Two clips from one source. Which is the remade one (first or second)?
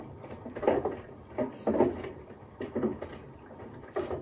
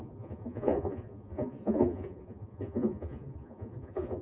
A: second